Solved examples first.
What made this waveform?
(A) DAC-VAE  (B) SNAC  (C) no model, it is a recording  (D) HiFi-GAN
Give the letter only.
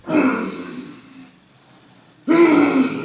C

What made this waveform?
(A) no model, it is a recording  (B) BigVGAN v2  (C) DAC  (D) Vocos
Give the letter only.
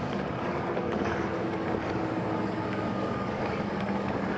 C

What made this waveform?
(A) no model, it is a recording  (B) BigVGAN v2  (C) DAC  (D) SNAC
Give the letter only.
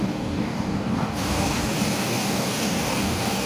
C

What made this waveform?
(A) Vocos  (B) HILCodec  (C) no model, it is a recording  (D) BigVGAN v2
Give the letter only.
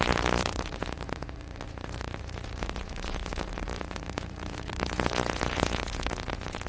A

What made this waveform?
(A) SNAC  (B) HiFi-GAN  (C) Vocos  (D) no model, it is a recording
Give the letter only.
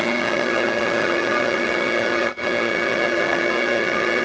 B